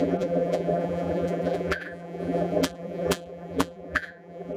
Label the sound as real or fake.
fake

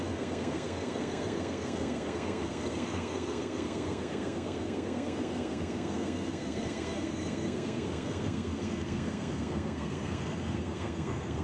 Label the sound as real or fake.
fake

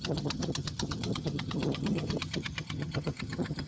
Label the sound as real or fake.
fake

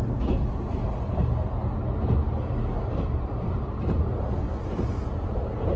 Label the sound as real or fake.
real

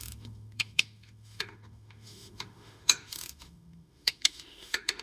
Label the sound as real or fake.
fake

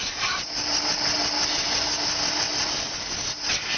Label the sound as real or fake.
real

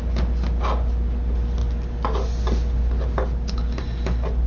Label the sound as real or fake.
real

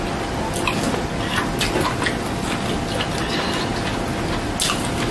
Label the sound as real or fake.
real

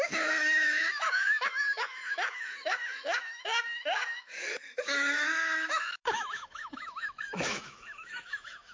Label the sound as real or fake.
fake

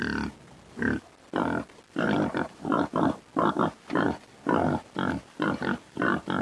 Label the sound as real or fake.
real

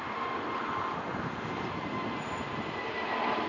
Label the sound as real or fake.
real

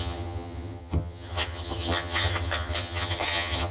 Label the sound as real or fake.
fake